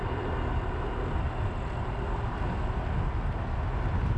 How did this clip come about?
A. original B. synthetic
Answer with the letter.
A